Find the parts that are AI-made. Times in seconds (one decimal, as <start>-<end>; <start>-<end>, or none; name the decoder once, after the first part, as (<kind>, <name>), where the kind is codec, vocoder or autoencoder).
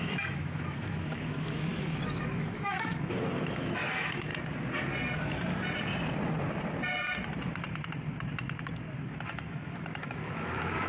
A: 0.0-4.3 (autoencoder, DAC-VAE); 9.2-10.9